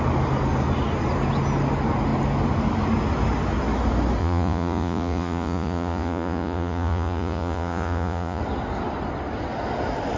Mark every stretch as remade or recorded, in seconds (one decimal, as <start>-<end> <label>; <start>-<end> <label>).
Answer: 0.0-4.2 recorded; 4.2-8.4 remade; 8.4-10.2 recorded